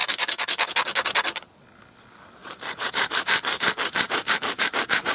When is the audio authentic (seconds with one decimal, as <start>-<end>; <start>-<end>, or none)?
0.7-2.4